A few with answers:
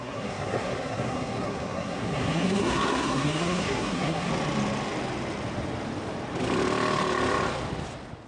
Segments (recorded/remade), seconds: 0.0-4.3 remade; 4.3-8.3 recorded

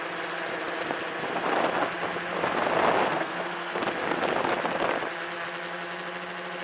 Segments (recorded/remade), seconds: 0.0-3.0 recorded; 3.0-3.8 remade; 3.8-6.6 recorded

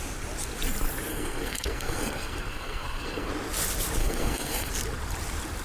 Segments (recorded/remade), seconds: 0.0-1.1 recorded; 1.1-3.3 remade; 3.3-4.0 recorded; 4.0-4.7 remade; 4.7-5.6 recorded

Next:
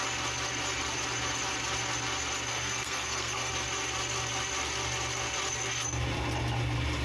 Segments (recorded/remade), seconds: 0.0-2.5 recorded; 2.5-3.5 remade; 3.5-7.0 recorded

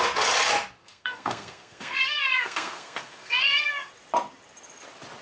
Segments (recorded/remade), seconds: 0.0-0.8 recorded; 0.8-3.9 remade; 3.9-5.2 recorded

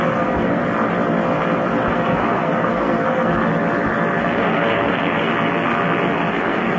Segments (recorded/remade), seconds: 0.0-0.6 remade; 0.6-1.9 recorded; 1.9-3.4 remade; 3.4-4.2 recorded; 4.2-5.3 remade; 5.3-6.3 recorded; 6.3-6.8 remade